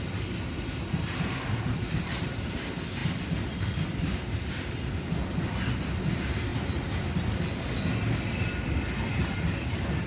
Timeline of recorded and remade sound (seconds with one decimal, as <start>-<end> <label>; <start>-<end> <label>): 0.0-10.1 recorded